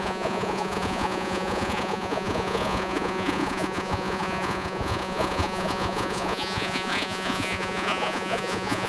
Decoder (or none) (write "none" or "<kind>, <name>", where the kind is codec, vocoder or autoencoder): vocoder, Vocos